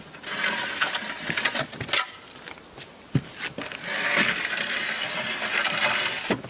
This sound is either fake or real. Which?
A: real